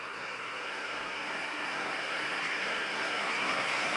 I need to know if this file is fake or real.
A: fake